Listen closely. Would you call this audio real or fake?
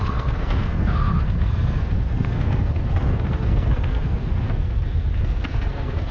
fake